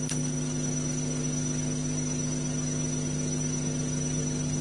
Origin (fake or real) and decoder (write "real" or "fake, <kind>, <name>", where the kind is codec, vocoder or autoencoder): real